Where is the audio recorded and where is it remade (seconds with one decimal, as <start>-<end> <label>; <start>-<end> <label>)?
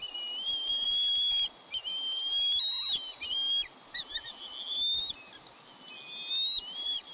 0.0-7.1 recorded